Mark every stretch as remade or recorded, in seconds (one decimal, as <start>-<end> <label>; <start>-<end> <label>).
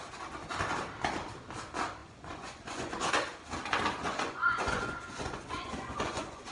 0.0-2.0 recorded; 2.0-3.1 remade; 3.1-4.0 recorded; 4.0-6.5 remade